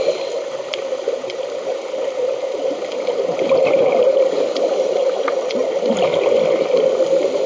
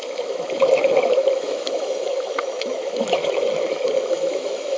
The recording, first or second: first